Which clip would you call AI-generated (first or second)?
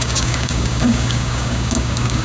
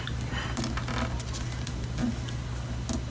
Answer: first